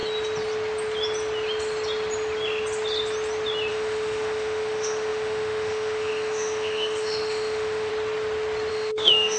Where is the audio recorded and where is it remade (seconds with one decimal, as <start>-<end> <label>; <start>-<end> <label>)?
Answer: 0.0-3.7 recorded; 3.7-7.9 remade; 7.9-8.7 recorded; 8.7-9.4 remade